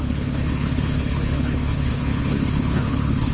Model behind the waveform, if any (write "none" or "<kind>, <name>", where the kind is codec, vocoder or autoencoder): codec, HILCodec